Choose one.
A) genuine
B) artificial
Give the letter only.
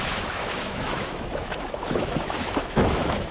B